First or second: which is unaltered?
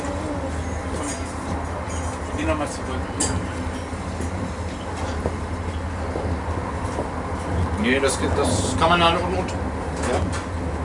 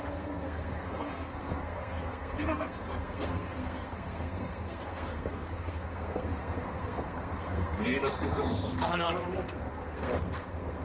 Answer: first